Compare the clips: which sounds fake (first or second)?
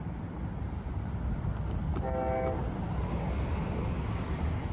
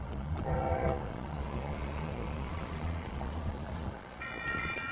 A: second